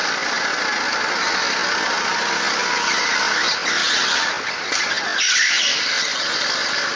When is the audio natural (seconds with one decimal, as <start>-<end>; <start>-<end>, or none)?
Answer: 0.0-7.0